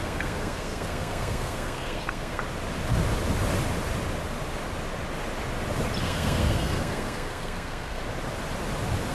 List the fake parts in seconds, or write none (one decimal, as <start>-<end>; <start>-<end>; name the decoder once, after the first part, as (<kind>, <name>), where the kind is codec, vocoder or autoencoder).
0.0-2.4 (codec, SNAC); 6.0-8.0